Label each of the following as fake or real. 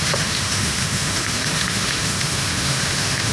fake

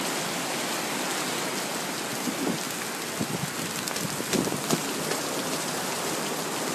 real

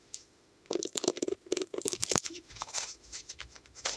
fake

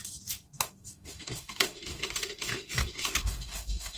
fake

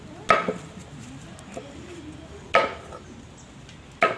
real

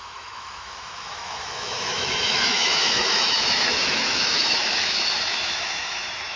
fake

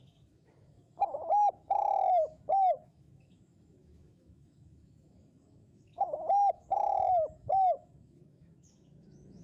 fake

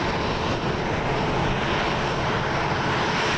real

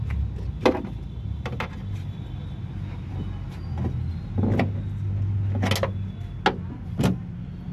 real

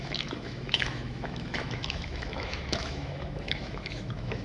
fake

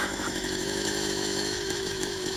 fake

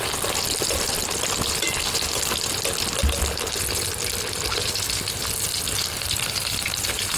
real